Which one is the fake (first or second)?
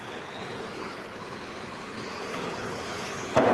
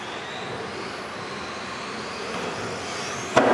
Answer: first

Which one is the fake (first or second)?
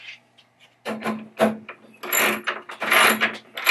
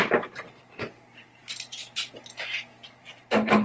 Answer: second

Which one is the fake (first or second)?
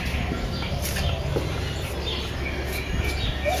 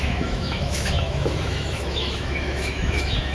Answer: second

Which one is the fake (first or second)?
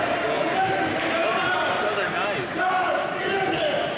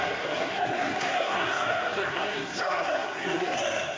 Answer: second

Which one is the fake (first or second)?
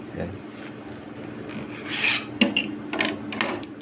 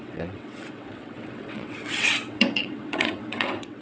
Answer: second